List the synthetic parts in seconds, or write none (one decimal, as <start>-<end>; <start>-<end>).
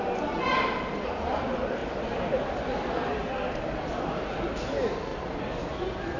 1.8-3.9; 5.1-6.2